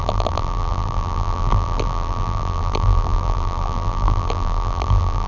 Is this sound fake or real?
fake